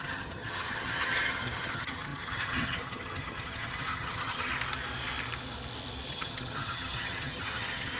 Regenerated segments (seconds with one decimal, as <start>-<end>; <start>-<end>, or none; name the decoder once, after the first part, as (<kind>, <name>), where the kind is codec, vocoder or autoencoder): 0.0-4.5 (vocoder, HiFi-GAN); 6.1-8.0